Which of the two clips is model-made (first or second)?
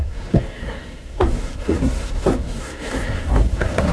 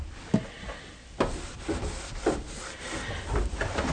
first